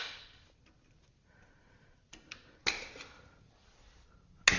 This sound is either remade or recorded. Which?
recorded